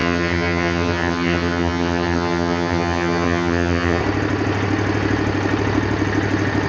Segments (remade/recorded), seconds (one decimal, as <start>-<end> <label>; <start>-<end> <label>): 0.0-4.0 remade; 4.0-6.7 recorded